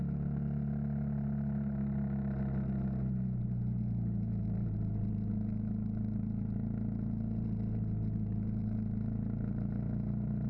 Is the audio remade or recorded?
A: recorded